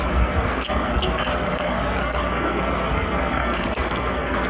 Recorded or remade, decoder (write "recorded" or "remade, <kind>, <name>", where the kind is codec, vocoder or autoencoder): remade, codec, SNAC